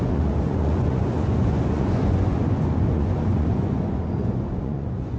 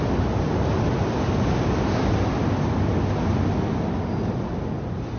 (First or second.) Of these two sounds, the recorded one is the second